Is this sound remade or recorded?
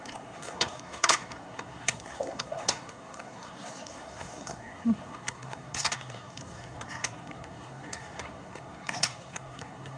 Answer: remade